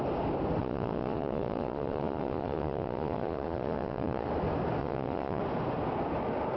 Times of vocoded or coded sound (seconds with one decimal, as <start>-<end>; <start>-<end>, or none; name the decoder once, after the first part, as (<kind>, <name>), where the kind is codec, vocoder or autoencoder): 0.6-4.3 (vocoder, Vocos); 4.8-5.4